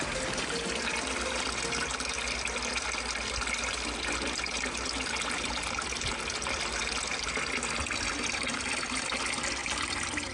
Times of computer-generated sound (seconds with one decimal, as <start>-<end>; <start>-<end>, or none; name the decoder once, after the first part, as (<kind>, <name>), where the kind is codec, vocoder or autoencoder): none